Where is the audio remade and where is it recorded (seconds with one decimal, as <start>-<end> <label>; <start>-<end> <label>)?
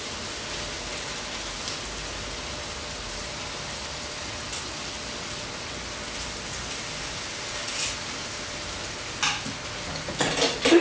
0.0-10.8 recorded